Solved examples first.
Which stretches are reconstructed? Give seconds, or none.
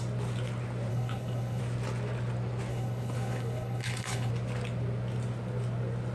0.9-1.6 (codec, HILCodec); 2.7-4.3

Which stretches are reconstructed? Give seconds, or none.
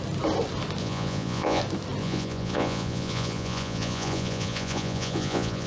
0.8-1.6 (vocoder, Vocos); 2.0-5.7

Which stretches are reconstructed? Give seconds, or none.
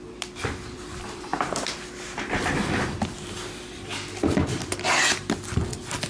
none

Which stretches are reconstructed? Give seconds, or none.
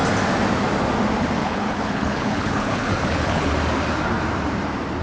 1.4-3.5 (codec, HILCodec)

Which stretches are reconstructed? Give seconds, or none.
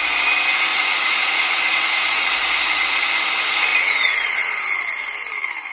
0.7-3.2 (vocoder, Vocos); 3.7-4.6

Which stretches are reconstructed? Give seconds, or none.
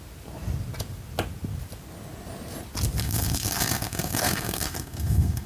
3.0-5.5 (codec, SNAC)